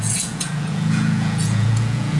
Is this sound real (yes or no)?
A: no